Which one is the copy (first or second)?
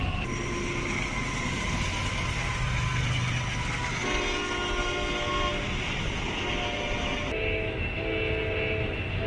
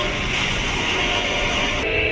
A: second